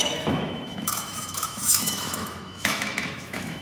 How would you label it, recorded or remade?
remade